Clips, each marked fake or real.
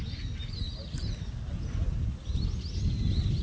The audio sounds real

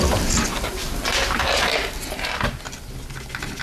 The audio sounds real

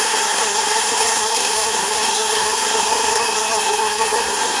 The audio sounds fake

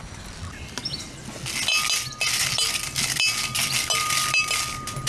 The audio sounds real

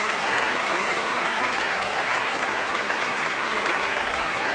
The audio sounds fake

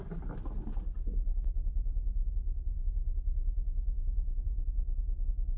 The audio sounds real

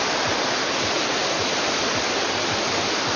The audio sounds real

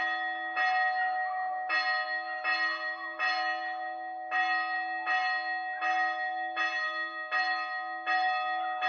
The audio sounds real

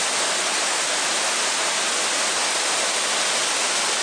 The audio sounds real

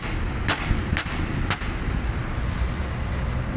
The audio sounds real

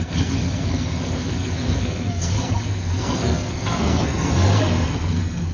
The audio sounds fake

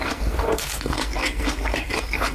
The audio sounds fake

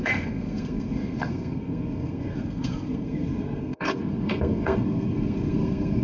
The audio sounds fake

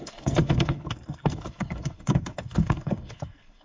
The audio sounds fake